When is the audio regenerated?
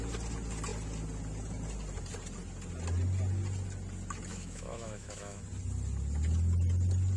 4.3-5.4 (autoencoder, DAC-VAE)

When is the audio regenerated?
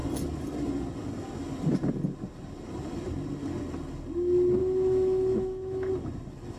4.6-5.9 (autoencoder, DAC-VAE)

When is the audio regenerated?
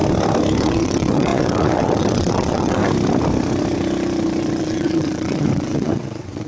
0.6-2.8 (vocoder, WaveNeXt); 4.6-6.5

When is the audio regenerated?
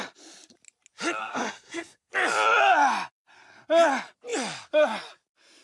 1.2-2.1 (codec, SNAC)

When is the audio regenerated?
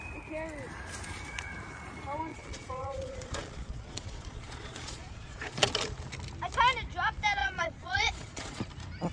2.3-5.7 (vocoder, Vocos); 7.4-8.6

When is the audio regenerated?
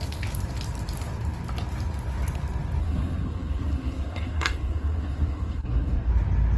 2.8-6.1 (codec, SNAC)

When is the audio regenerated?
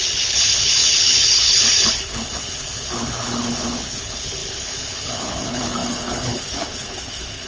0.0-7.5 (codec, HILCodec)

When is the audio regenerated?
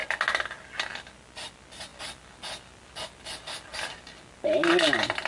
none